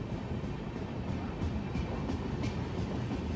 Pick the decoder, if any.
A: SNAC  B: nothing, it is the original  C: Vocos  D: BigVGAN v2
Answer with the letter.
D